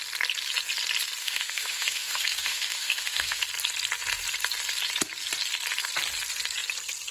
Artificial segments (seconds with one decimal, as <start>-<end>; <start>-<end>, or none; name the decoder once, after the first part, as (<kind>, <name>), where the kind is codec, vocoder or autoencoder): 1.2-3.4 (autoencoder, DAC-VAE)